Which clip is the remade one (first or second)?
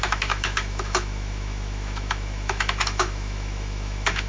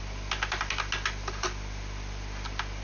first